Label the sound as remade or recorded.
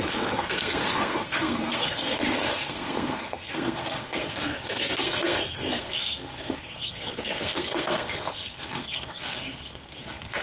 remade